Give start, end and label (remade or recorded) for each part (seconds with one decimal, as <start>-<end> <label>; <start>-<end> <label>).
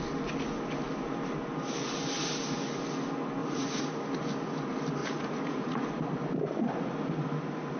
0.0-3.4 recorded; 3.4-4.0 remade; 4.0-5.0 recorded; 5.0-6.0 remade; 6.0-7.8 recorded